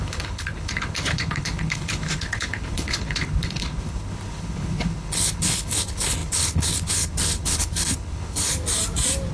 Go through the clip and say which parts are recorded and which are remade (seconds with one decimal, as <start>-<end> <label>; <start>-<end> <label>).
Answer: 0.0-8.5 remade; 8.5-9.3 recorded